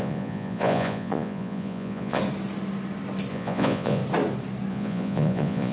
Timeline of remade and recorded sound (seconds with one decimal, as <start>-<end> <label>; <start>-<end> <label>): 0.0-2.2 remade; 2.2-3.3 recorded; 3.3-4.0 remade; 4.0-4.7 recorded; 4.7-5.7 remade

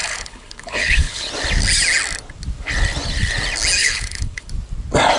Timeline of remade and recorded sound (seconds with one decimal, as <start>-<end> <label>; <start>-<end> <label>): 0.0-1.3 remade; 1.3-3.8 recorded; 3.8-4.5 remade; 4.5-5.2 recorded